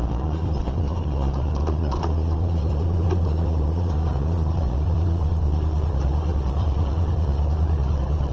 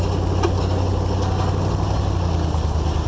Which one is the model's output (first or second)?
first